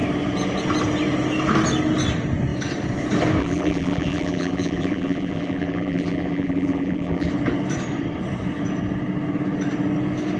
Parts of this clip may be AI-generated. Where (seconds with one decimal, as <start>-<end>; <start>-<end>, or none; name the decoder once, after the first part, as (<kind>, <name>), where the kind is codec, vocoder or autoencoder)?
3.4-7.3 (vocoder, BigVGAN v2)